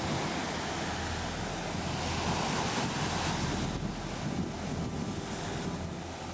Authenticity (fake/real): real